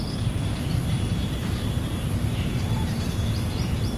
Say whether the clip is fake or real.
fake